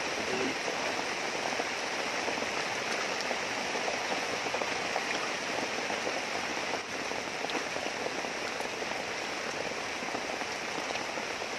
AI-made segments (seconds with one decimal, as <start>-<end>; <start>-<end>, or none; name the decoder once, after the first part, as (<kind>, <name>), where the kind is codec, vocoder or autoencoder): 3.9-4.8 (vocoder, Vocos)